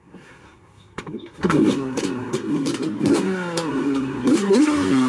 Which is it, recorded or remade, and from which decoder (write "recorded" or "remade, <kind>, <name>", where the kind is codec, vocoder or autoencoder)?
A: remade, codec, SNAC